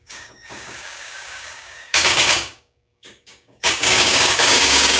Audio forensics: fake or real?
fake